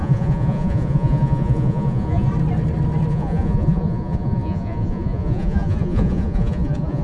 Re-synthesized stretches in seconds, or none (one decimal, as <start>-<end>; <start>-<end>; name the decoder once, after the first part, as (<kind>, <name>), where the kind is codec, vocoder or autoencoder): 0.0-2.3 (vocoder, Vocos); 3.1-7.0